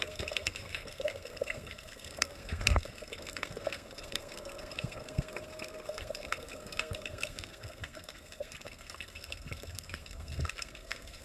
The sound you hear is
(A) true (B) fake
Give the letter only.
B